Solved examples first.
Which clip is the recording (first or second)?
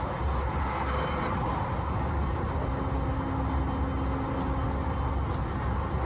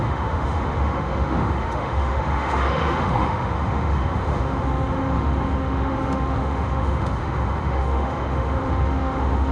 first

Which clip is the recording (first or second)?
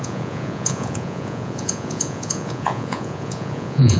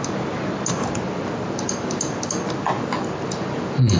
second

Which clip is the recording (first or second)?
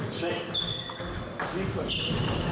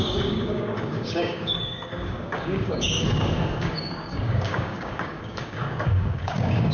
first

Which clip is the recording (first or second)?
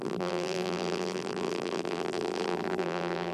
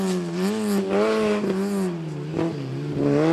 second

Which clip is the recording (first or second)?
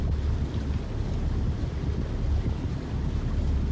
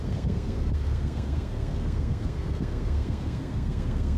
first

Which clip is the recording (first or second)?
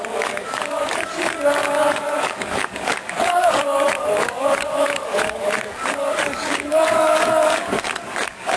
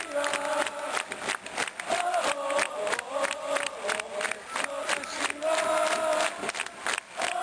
second